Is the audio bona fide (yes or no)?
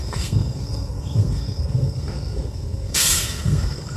no